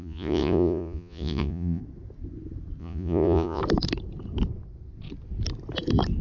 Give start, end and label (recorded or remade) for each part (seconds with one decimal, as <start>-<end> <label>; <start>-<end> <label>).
0.0-1.8 remade; 1.8-2.8 recorded; 2.8-3.6 remade; 3.6-6.2 recorded